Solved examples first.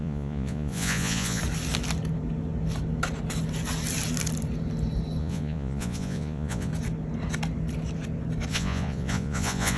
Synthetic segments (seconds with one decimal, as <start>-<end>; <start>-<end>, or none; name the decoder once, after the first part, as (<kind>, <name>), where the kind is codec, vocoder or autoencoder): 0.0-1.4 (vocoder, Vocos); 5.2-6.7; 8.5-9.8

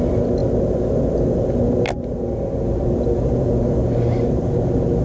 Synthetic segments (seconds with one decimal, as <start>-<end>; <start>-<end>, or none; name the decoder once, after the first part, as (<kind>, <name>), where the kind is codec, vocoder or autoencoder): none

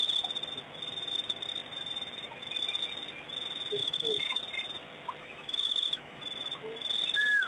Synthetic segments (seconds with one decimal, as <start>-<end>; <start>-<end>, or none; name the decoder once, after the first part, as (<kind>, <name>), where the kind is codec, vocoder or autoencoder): 3.8-4.4 (autoencoder, DAC-VAE); 5.2-6.2